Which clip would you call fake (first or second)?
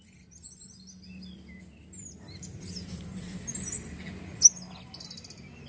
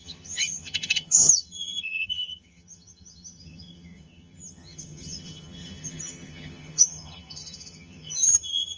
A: second